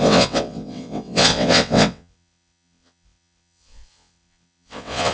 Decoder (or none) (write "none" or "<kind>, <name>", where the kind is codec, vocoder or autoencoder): vocoder, WaveNeXt